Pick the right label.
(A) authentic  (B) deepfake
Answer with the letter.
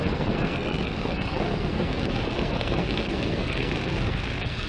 B